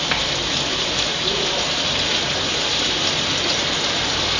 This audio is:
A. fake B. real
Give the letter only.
B